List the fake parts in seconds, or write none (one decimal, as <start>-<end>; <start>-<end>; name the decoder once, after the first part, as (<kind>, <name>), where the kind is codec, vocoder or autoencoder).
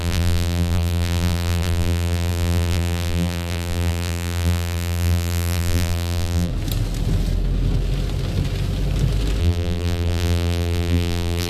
0.0-6.5 (vocoder, BigVGAN v2); 9.4-11.5